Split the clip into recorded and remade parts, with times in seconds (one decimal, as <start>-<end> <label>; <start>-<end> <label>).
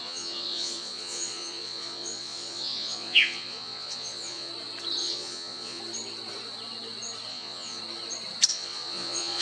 0.0-4.5 remade; 4.5-5.0 recorded; 5.0-5.8 remade; 5.8-7.3 recorded; 7.3-7.8 remade; 7.8-8.5 recorded; 8.5-9.4 remade